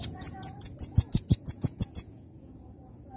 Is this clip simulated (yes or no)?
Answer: yes